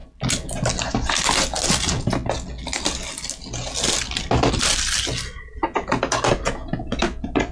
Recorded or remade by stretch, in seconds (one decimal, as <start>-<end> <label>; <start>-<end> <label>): 0.0-7.5 recorded